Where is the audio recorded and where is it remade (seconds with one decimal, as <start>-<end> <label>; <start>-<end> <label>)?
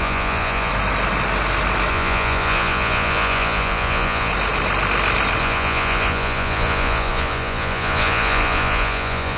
0.0-0.7 remade; 0.7-1.9 recorded; 1.9-4.3 remade; 4.3-5.4 recorded; 5.4-9.4 remade